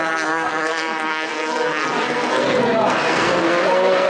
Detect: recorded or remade remade